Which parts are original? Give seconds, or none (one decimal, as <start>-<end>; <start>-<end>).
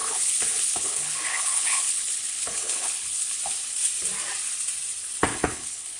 3.4-5.3